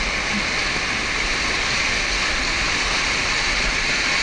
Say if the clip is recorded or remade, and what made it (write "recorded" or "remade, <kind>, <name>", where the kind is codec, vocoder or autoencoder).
recorded